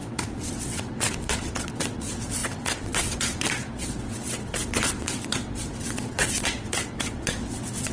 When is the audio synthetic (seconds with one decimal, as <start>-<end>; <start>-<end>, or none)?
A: 0.0-7.9